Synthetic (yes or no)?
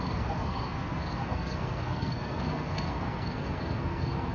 yes